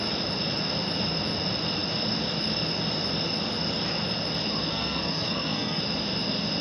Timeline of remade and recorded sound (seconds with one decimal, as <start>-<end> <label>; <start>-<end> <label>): 0.0-4.7 recorded; 4.7-5.8 remade; 5.8-6.6 recorded